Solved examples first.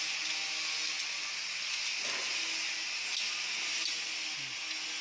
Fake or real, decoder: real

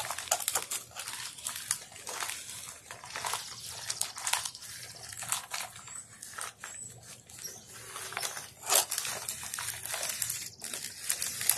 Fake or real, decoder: real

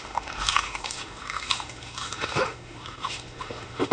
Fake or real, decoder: fake, autoencoder, DAC-VAE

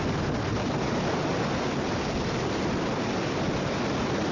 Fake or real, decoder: real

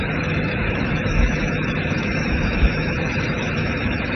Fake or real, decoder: fake, autoencoder, DAC-VAE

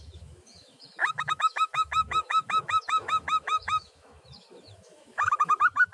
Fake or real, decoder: fake, autoencoder, DAC-VAE